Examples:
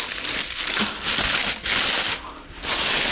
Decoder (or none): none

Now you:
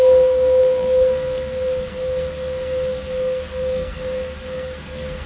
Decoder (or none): codec, SNAC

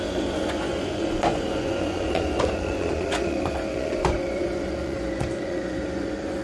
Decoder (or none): vocoder, Vocos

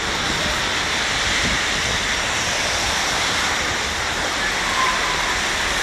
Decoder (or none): vocoder, BigVGAN v2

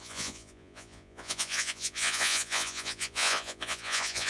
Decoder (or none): vocoder, Vocos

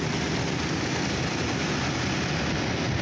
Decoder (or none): none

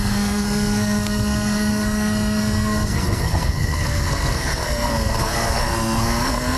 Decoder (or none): codec, SNAC